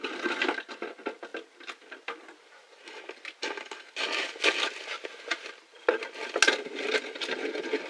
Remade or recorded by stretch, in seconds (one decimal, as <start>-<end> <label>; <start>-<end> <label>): 0.0-7.9 recorded